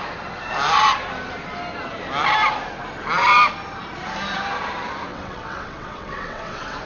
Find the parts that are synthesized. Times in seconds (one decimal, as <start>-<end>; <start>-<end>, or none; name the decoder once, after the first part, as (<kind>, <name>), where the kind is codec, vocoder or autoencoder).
5.1-6.8 (vocoder, WaveNeXt)